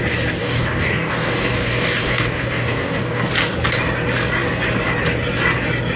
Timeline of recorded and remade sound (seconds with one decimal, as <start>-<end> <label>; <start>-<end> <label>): 0.0-0.4 recorded; 0.4-3.3 remade; 3.3-6.0 recorded